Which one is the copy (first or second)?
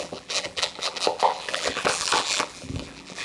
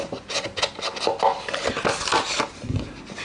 first